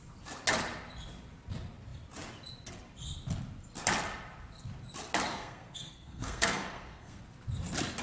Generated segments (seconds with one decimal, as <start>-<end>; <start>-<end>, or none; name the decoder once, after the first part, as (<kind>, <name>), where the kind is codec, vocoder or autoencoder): 5.3-7.2 (codec, SNAC)